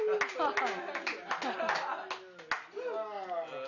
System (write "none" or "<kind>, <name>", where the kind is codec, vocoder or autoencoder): none